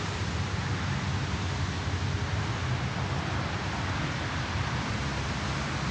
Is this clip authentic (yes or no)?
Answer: yes